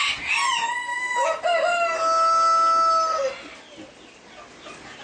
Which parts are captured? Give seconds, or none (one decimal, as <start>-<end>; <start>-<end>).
0.0-0.9; 1.4-5.0